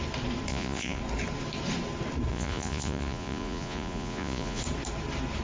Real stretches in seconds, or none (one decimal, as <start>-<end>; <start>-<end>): 0.0-0.5; 1.0-2.3; 4.6-5.4